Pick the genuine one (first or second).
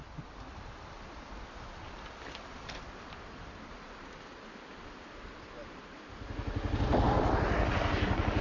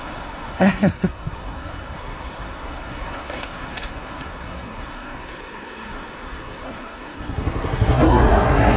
first